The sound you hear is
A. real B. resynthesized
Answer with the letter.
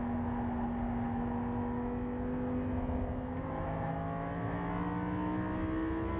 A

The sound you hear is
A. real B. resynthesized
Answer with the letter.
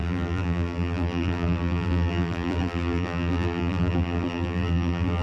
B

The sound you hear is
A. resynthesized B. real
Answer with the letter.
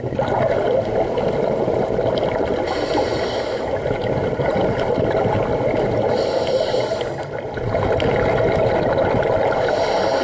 B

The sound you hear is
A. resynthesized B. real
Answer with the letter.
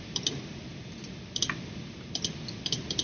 A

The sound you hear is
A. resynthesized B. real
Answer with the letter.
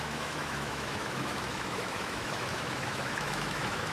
A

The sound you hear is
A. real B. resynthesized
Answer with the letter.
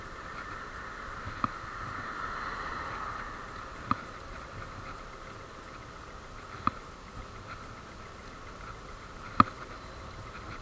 A